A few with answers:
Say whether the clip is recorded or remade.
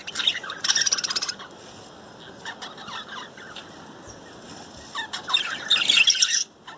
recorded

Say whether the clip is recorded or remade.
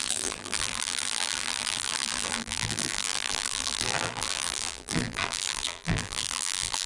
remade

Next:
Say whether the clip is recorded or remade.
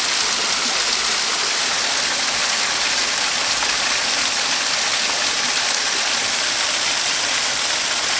recorded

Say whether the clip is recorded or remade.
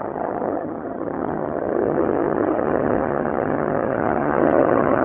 remade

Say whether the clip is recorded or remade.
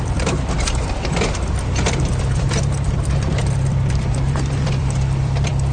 remade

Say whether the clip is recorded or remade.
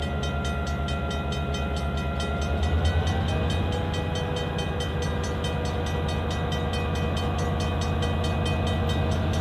recorded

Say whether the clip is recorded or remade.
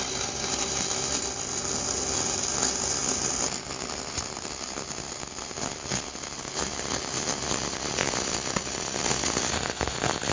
recorded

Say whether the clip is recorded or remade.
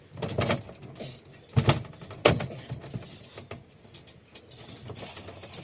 recorded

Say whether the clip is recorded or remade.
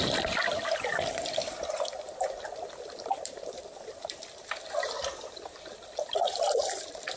remade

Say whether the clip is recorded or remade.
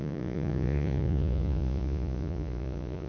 remade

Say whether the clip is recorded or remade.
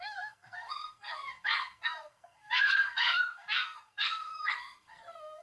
remade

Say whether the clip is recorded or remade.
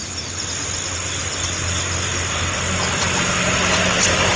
recorded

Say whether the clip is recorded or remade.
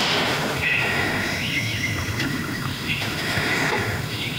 remade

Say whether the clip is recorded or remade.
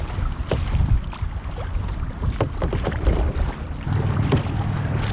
recorded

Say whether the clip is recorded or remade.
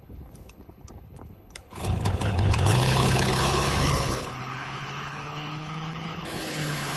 remade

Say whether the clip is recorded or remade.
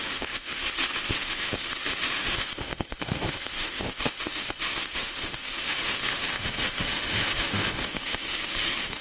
remade